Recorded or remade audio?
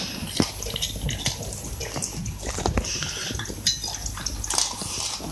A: recorded